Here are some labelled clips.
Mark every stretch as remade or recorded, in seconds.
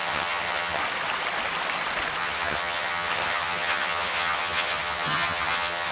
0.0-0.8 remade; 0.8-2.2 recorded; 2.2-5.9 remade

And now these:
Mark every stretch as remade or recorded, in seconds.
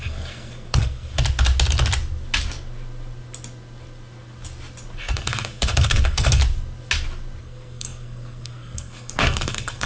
0.0-1.1 remade; 1.1-5.0 recorded; 5.0-6.4 remade; 6.4-7.4 recorded; 7.4-9.9 remade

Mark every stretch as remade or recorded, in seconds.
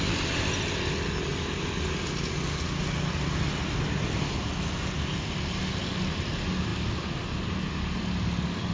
0.0-8.7 recorded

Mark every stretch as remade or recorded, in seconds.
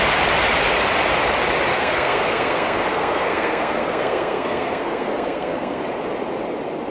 0.0-1.7 recorded; 1.7-5.8 remade; 5.8-6.9 recorded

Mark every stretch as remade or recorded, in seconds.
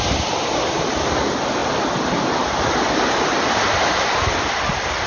0.0-5.1 recorded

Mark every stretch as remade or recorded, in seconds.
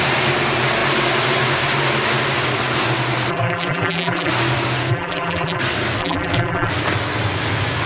0.0-3.3 recorded; 3.3-4.3 remade; 4.3-4.9 recorded; 4.9-5.6 remade; 5.6-6.0 recorded; 6.0-6.7 remade; 6.7-7.9 recorded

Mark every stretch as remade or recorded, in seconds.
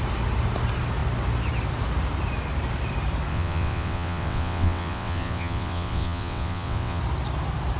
0.0-3.3 recorded; 3.3-7.0 remade; 7.0-7.8 recorded